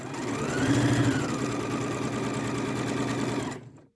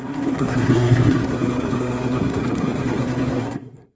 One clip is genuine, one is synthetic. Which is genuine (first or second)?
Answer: first